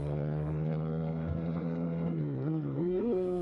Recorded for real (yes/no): no